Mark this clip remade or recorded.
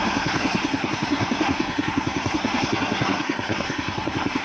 remade